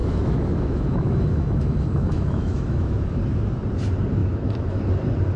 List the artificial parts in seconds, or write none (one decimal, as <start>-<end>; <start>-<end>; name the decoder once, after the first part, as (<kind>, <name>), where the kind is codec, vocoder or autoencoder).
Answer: 0.0-3.2 (autoencoder, DAC-VAE); 4.2-4.8